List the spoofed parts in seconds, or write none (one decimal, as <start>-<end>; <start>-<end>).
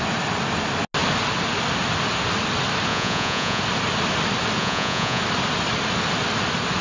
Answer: 2.9-3.6; 4.6-5.2